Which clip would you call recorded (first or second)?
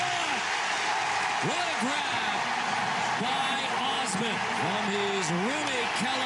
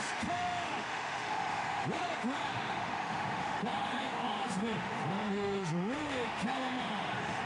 first